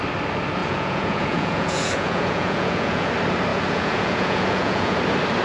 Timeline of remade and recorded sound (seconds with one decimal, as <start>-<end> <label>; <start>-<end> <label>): 0.0-0.6 recorded; 0.6-3.1 remade; 3.1-3.5 recorded; 3.5-5.0 remade; 5.0-5.4 recorded